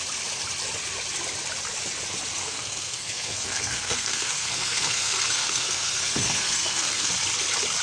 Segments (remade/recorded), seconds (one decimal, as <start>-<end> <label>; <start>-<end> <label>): 0.0-2.4 recorded; 2.4-7.1 remade; 7.1-7.8 recorded